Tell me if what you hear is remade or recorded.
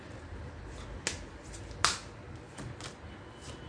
recorded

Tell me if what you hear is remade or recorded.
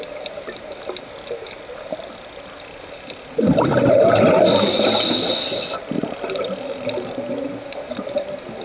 recorded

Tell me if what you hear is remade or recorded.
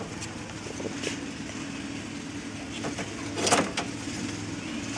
recorded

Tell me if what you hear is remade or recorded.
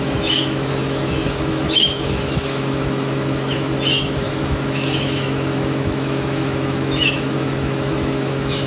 remade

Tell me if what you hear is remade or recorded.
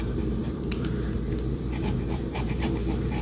remade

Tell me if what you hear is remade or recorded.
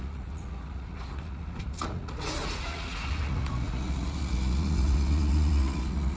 remade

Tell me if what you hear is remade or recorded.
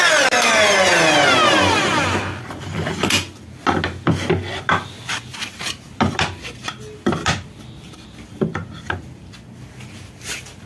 recorded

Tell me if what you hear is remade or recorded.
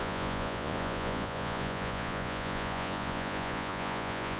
remade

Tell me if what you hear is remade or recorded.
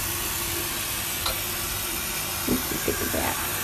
recorded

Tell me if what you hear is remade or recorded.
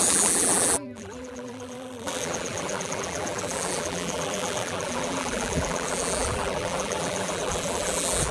remade